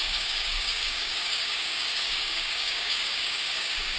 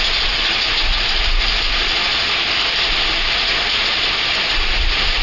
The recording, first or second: second